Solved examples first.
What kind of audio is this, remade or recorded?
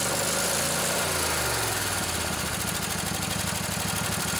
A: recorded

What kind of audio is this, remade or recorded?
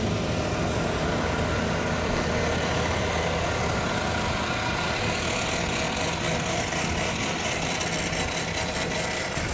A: recorded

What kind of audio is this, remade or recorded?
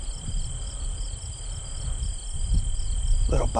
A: recorded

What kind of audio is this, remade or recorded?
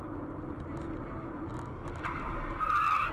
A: recorded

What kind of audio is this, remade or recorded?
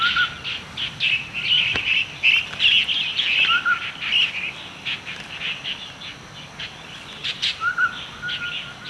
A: recorded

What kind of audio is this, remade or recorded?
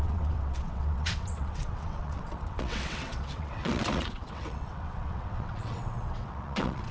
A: remade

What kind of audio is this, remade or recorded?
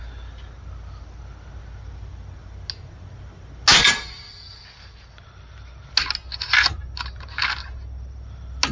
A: recorded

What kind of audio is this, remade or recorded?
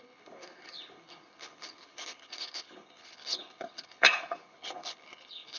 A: remade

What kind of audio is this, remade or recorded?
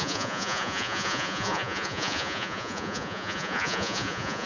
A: remade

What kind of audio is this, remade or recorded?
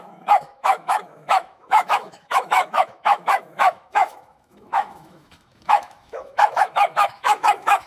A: remade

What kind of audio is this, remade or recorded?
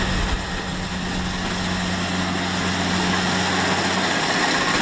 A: recorded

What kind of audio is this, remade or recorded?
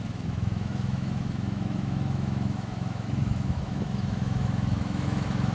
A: remade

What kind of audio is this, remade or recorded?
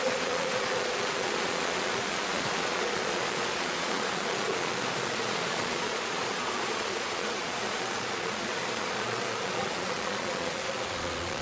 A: remade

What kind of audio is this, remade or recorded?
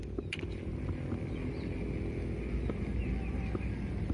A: recorded